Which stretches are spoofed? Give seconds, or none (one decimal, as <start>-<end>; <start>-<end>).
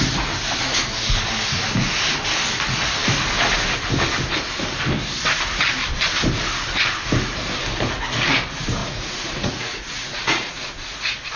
8.8-11.4